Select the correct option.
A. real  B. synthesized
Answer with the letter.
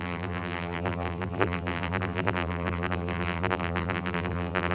B